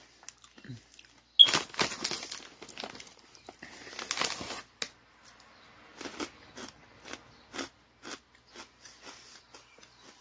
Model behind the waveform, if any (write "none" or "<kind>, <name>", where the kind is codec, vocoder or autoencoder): none